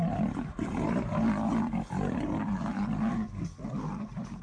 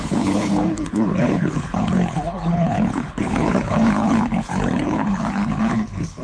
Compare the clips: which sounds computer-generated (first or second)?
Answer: second